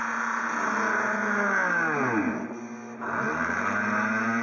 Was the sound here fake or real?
real